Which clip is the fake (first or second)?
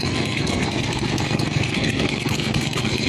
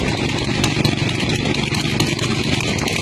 first